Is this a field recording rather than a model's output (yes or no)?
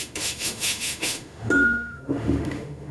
no